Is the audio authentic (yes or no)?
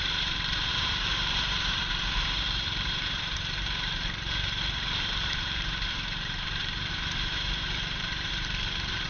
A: no